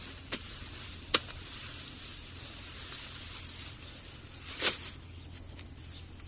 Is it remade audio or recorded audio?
recorded